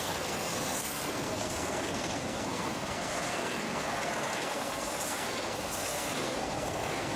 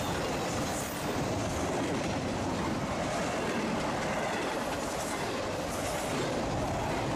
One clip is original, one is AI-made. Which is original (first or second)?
second